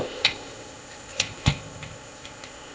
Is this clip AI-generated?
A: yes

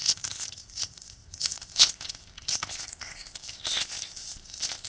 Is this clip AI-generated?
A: yes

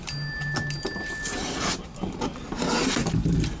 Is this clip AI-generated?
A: no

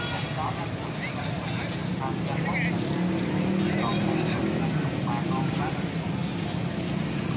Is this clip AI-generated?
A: no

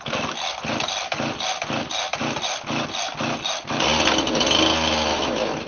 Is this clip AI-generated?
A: no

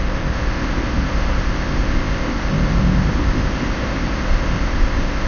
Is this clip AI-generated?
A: yes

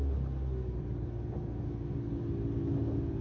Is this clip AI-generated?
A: no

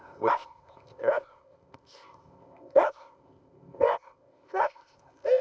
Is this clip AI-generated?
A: yes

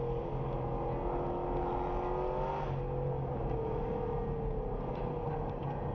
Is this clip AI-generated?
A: no